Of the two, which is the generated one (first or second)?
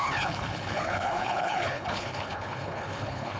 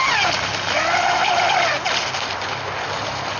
first